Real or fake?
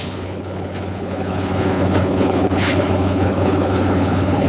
fake